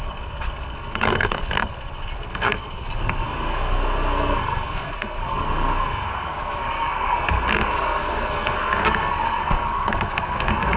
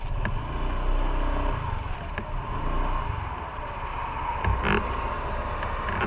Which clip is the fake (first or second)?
first